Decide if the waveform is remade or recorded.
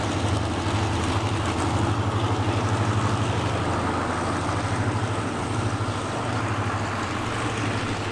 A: recorded